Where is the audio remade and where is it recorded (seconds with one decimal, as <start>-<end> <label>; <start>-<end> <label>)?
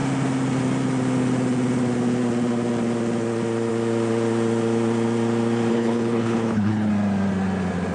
0.0-5.7 recorded; 5.7-6.9 remade; 6.9-7.9 recorded